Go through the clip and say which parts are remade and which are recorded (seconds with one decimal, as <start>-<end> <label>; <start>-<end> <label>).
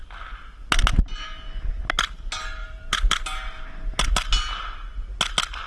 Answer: 0.0-2.6 recorded; 2.6-3.6 remade; 3.6-5.7 recorded